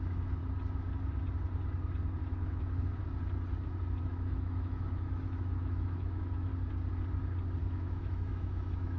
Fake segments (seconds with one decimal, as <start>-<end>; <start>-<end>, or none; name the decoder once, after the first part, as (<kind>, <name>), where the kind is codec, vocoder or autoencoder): 0.0-0.4 (autoencoder, DAC-VAE); 2.2-3.0; 4.0-6.5; 7.6-9.0